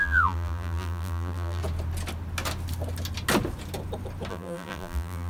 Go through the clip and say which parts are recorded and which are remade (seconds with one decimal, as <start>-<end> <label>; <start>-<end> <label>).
0.0-1.6 remade; 1.6-4.3 recorded; 4.3-5.3 remade